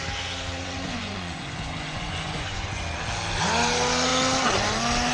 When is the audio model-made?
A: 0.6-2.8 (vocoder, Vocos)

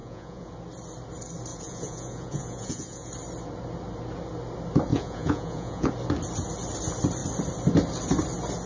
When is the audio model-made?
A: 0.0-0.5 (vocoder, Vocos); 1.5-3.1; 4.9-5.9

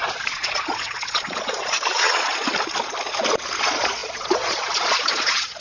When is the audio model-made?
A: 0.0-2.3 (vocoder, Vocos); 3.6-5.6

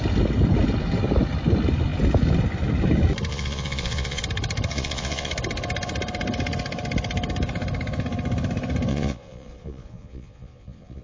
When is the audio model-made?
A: 3.3-4.2 (vocoder, Vocos); 4.7-5.3; 8.9-11.0

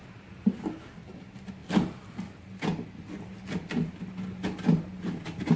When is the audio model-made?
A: none